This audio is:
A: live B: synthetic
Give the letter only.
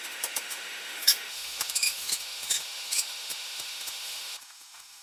B